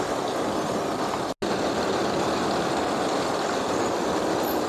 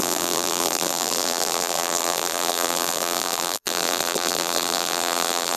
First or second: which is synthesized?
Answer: second